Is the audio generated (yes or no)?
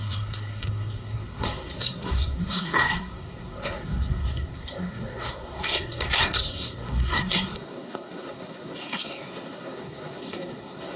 yes